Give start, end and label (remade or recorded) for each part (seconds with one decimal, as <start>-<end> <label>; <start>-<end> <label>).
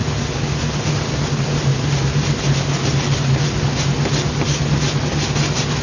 0.0-5.8 recorded